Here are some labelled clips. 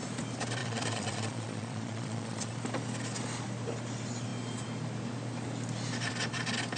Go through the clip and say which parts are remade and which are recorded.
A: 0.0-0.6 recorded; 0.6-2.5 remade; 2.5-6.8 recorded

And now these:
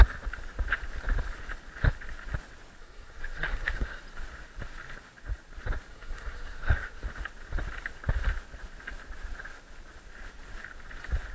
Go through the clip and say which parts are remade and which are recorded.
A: 0.0-2.8 recorded; 2.8-4.0 remade; 4.0-5.9 recorded; 5.9-7.0 remade; 7.0-11.3 recorded

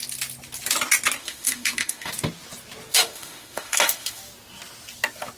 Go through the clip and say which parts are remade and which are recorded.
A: 0.0-1.2 recorded; 1.2-2.1 remade; 2.1-2.9 recorded; 2.9-4.2 remade; 4.2-5.4 recorded

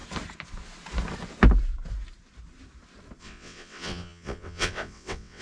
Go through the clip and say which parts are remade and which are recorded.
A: 0.0-3.2 recorded; 3.2-5.4 remade